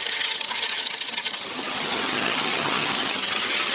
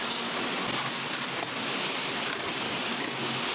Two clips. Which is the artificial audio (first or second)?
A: first